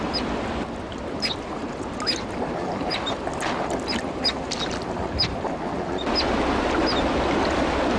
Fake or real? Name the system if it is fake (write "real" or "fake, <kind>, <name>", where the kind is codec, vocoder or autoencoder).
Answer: real